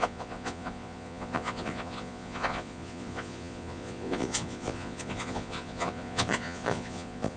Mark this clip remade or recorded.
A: remade